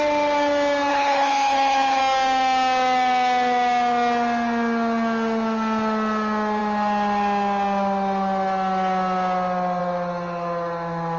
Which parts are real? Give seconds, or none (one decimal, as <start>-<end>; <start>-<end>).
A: 0.0-0.9; 2.0-11.2